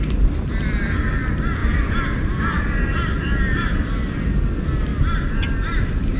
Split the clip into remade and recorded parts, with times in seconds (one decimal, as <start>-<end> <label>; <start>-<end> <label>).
0.0-1.6 recorded; 1.6-4.2 remade; 4.2-4.9 recorded; 4.9-5.8 remade; 5.8-6.2 recorded